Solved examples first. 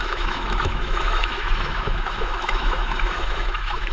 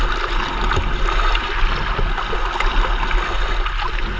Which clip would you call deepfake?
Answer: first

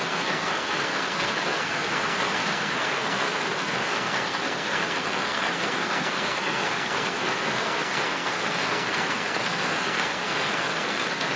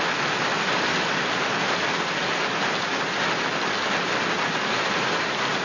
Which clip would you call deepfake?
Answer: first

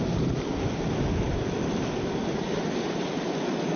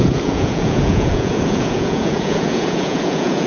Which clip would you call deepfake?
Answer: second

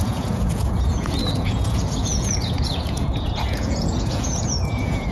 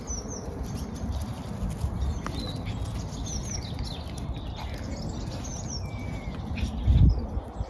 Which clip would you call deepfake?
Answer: first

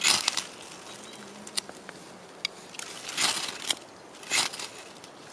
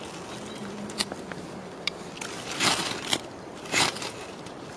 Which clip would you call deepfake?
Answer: second